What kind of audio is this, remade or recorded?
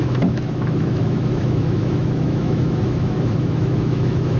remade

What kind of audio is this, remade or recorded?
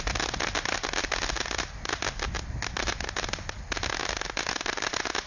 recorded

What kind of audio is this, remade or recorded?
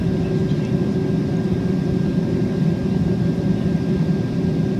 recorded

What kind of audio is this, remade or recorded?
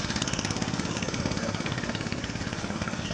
remade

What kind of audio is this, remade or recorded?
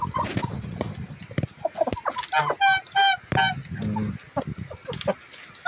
recorded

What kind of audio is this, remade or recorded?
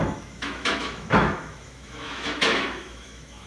remade